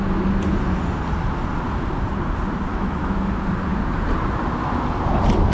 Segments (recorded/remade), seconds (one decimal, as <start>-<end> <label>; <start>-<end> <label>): 0.0-2.7 recorded; 2.7-3.3 remade; 3.3-5.5 recorded